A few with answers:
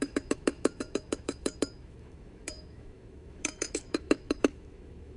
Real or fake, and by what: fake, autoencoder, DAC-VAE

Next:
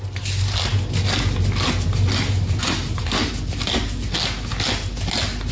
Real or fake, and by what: real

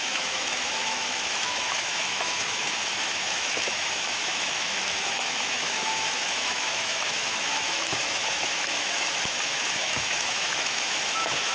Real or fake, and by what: fake, autoencoder, DAC-VAE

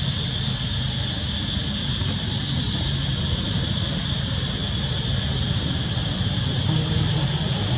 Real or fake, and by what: real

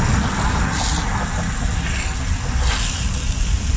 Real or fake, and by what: real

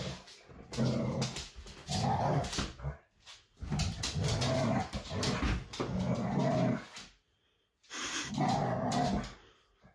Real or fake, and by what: real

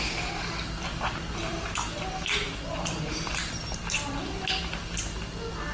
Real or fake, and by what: real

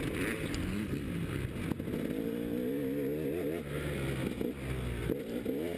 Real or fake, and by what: real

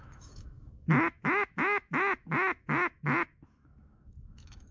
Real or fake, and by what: fake, autoencoder, DAC-VAE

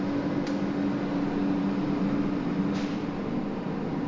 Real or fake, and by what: real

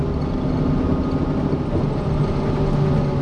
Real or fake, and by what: real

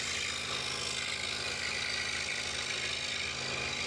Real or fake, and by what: real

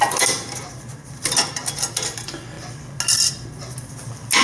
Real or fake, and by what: real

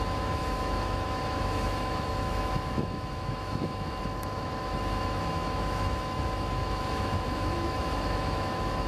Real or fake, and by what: fake, autoencoder, DAC-VAE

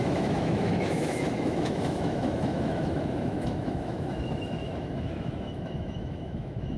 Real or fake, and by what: fake, autoencoder, DAC-VAE